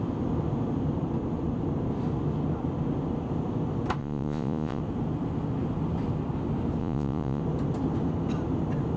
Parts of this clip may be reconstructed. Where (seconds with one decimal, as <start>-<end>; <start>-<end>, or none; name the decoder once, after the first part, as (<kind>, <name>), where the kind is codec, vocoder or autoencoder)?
4.0-4.8 (vocoder, Vocos); 6.8-7.4